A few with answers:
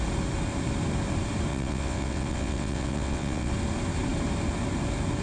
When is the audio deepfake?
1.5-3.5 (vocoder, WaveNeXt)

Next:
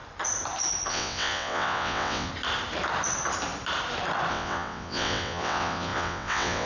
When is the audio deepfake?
0.9-2.3 (vocoder, WaveNeXt); 4.3-6.7

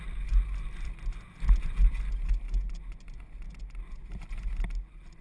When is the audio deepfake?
none

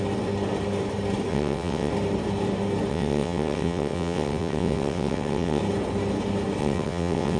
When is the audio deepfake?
1.3-1.9 (vocoder, WaveNeXt); 2.9-5.6; 6.6-7.4

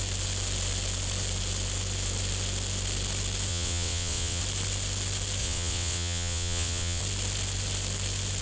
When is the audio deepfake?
3.5-4.4 (vocoder, WaveNeXt); 5.4-7.0

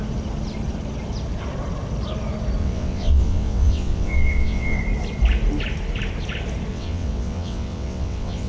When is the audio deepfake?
2.6-4.8 (vocoder, WaveNeXt); 6.7-8.5